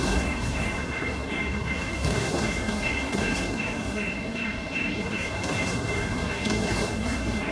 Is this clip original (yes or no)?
no